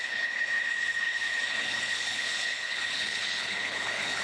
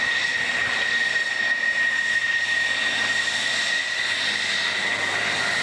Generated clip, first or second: first